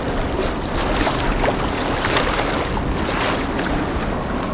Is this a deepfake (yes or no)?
no